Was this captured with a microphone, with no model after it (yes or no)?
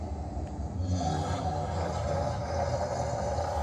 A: yes